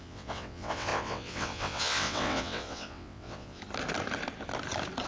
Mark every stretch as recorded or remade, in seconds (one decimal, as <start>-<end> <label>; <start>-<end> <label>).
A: 0.0-3.6 remade; 3.6-5.1 recorded

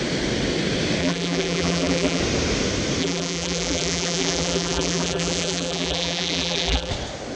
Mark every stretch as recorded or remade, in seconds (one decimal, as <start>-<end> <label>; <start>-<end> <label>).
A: 0.0-1.0 recorded; 1.0-2.2 remade; 2.2-3.0 recorded; 3.0-6.9 remade; 6.9-7.4 recorded

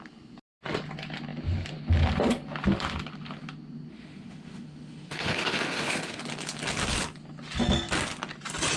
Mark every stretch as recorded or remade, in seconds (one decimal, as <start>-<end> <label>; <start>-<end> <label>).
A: 0.0-3.9 recorded; 3.9-6.2 remade; 6.2-8.8 recorded

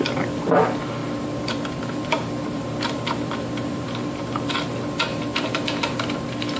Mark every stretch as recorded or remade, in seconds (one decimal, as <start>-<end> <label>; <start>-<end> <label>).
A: 0.0-1.0 recorded; 1.0-4.5 remade; 4.5-5.1 recorded; 5.1-6.6 remade

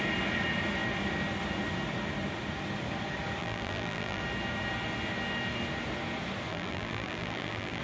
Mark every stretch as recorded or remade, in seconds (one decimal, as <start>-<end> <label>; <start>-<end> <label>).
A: 0.0-3.4 recorded; 3.4-4.2 remade; 4.2-6.5 recorded; 6.5-7.8 remade